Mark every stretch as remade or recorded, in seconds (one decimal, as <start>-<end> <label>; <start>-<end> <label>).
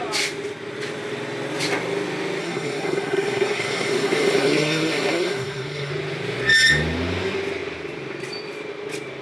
0.0-2.4 recorded; 2.4-5.9 remade; 5.9-9.2 recorded